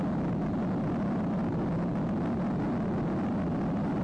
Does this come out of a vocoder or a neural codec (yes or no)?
no